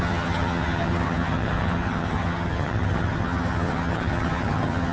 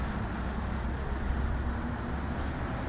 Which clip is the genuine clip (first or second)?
second